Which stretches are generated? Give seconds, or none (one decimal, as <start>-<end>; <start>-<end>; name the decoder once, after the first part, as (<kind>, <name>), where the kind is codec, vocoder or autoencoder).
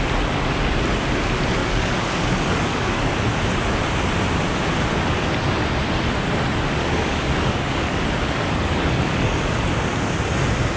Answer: 1.6-3.1 (codec, DAC); 6.8-9.7